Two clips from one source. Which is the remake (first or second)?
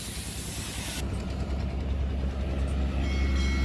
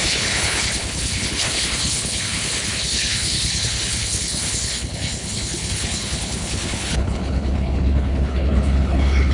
second